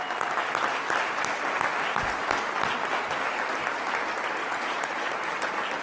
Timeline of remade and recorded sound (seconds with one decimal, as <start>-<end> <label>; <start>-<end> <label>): 0.0-4.4 recorded; 4.4-5.1 remade; 5.1-5.8 recorded